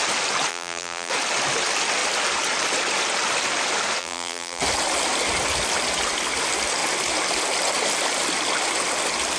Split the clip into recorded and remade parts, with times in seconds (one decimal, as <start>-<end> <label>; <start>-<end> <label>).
0.0-0.5 recorded; 0.5-1.1 remade; 1.1-4.0 recorded; 4.0-4.6 remade; 4.6-9.4 recorded